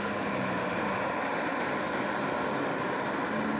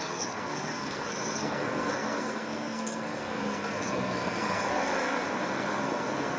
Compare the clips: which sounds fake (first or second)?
second